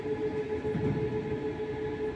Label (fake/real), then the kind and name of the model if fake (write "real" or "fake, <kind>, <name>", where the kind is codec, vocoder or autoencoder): real